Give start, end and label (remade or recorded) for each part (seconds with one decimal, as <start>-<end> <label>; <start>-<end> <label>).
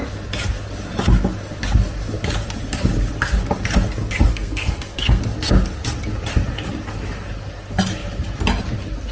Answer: 0.0-4.3 recorded; 4.3-5.2 remade; 5.2-9.1 recorded